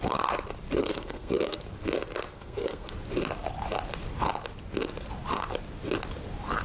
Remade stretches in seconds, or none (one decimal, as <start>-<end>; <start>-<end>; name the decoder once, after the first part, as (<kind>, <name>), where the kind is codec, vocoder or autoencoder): 0.8-1.6 (codec, SNAC); 2.3-2.9